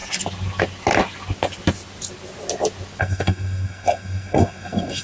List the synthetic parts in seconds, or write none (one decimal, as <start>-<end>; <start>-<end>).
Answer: 3.0-5.0